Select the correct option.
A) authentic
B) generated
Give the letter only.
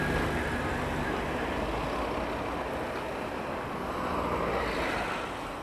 A